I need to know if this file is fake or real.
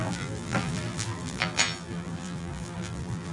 fake